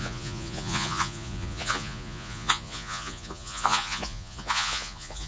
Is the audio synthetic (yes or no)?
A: yes